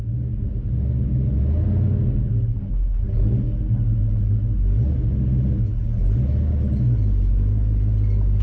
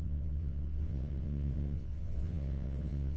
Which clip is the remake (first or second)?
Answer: second